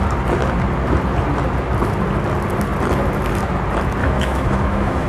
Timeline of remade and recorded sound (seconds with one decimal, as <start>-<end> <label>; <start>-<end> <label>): 0.0-4.0 recorded; 4.0-5.1 remade